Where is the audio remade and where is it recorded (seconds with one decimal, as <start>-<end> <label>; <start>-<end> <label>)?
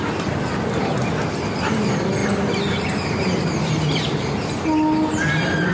0.0-5.7 recorded